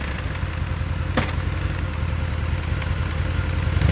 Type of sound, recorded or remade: recorded